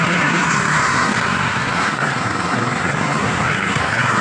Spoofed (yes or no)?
yes